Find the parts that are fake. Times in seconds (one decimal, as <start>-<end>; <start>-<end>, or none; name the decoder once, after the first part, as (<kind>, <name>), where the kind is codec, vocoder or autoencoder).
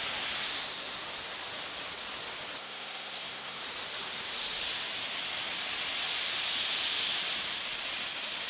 2.6-3.6 (codec, SNAC)